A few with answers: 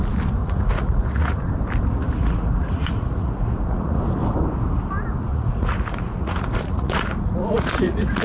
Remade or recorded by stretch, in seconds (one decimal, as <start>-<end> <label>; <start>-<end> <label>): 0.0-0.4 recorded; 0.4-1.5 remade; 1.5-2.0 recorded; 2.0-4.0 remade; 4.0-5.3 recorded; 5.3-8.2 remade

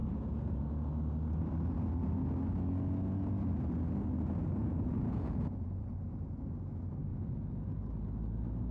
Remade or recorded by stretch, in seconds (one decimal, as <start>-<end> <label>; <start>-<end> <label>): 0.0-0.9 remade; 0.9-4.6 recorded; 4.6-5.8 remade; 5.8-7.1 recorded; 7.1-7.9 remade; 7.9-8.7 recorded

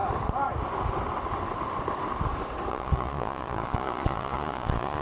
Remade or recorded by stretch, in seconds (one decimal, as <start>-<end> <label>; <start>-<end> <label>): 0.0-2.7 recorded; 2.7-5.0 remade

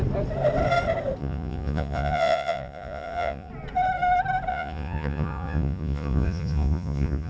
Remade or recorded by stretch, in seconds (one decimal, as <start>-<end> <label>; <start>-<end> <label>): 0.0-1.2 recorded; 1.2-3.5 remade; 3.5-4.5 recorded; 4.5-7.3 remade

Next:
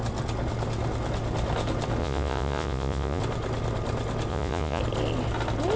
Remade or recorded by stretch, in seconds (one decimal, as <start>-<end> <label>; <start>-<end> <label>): 0.0-2.0 recorded; 2.0-3.2 remade; 3.2-4.3 recorded; 4.3-4.8 remade; 4.8-5.8 recorded

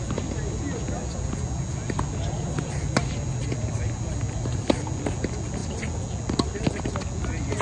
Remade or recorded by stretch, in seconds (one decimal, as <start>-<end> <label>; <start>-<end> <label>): 0.0-7.6 recorded